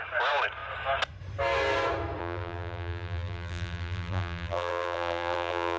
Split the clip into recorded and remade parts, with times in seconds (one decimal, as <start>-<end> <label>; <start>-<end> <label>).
0.0-2.2 recorded; 2.2-5.8 remade